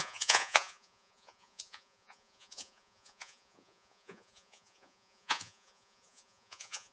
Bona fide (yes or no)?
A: no